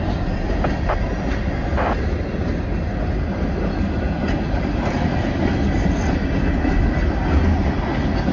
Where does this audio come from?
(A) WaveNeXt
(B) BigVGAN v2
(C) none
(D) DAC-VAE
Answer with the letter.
C